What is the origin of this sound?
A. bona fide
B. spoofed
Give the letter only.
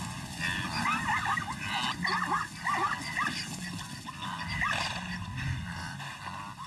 A